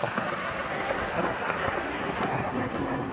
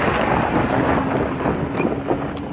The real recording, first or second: second